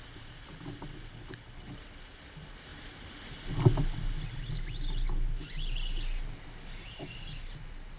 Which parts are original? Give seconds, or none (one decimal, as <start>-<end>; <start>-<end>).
0.0-8.0